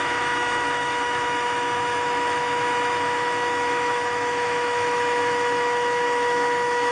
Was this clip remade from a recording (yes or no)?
yes